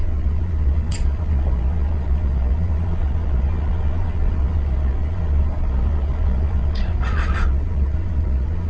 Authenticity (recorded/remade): remade